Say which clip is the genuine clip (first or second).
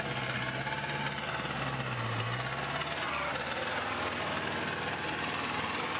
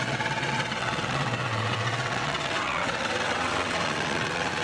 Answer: first